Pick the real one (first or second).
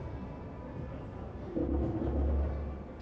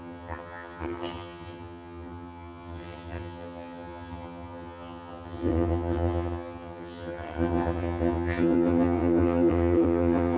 first